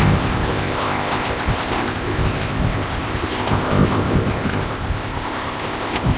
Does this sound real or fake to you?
fake